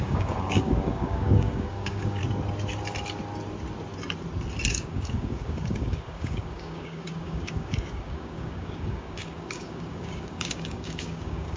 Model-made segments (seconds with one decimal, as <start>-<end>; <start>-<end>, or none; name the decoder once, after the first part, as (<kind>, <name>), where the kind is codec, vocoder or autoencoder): 0.0-2.2 (codec, DAC); 4.7-11.6